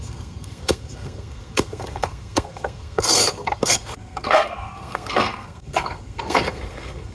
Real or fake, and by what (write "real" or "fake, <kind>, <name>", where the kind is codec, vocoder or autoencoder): fake, codec, SNAC